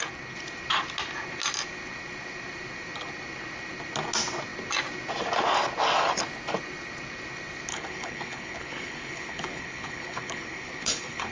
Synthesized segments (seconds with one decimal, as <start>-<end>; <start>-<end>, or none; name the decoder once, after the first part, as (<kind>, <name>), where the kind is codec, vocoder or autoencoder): 7.7-11.3 (codec, HILCodec)